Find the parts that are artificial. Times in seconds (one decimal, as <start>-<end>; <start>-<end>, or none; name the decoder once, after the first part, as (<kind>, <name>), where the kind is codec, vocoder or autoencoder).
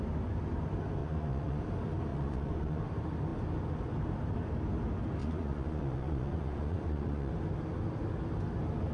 1.0-1.6 (vocoder, Vocos); 2.1-2.8; 5.2-7.3